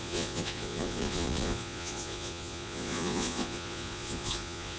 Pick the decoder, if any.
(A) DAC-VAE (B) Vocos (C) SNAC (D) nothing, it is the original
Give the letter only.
B